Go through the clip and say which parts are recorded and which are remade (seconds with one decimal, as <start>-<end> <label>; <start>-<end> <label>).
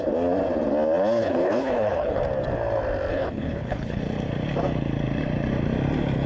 0.0-1.2 recorded; 1.2-2.2 remade; 2.2-3.1 recorded; 3.1-4.0 remade; 4.0-6.3 recorded